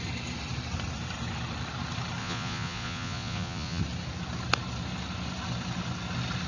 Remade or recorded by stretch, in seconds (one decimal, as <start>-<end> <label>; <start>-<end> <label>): 0.0-2.2 recorded; 2.2-3.8 remade; 3.8-6.5 recorded